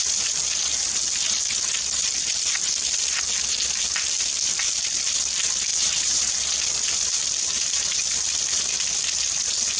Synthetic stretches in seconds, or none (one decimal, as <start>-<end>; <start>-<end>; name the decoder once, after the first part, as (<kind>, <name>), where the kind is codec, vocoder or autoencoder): 5.7-6.3 (vocoder, BigVGAN v2)

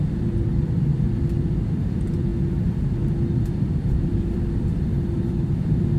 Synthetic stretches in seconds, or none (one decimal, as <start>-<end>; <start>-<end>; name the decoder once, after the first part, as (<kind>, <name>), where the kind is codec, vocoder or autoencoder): 0.0-2.3 (vocoder, BigVGAN v2); 3.4-6.0